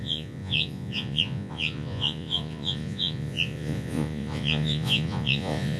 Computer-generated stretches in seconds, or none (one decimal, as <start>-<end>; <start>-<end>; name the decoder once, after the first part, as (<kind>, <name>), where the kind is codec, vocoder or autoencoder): 0.0-5.8 (vocoder, Vocos)